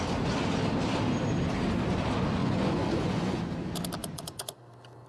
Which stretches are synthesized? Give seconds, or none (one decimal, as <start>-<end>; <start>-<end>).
2.4-3.4; 4.0-4.6